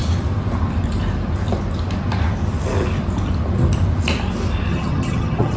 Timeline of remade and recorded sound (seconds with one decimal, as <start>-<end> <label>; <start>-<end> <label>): 0.0-4.7 recorded; 4.7-5.6 remade